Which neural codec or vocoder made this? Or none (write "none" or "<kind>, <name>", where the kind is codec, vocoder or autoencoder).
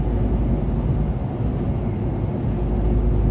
none